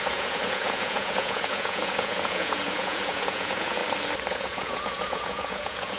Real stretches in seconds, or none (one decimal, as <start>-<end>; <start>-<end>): 3.8-4.3